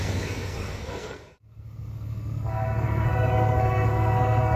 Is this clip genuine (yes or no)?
no